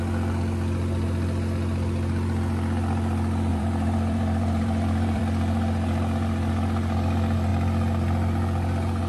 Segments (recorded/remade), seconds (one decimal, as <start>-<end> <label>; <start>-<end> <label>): 0.0-3.5 recorded; 3.5-5.2 remade; 5.2-9.1 recorded

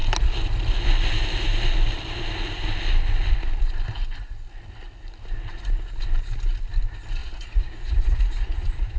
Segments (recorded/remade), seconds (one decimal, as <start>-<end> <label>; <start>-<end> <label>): 0.0-7.2 recorded; 7.2-9.0 remade

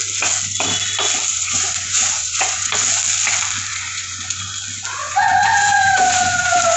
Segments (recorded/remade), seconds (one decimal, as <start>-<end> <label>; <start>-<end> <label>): 0.0-1.3 recorded; 1.3-2.7 remade; 2.7-3.7 recorded; 3.7-4.4 remade; 4.4-5.0 recorded; 5.0-6.8 remade

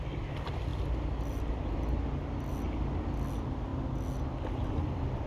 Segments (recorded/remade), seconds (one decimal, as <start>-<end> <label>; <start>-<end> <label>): 0.0-5.3 recorded